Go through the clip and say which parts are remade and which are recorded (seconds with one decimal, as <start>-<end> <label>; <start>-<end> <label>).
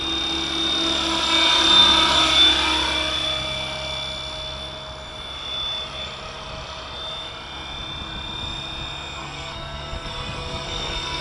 0.0-9.2 recorded; 9.2-11.2 remade